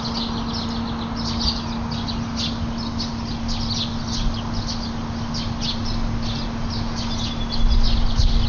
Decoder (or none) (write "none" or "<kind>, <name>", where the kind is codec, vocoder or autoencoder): none